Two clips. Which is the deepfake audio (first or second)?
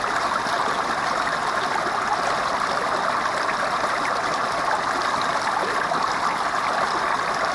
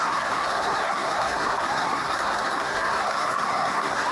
second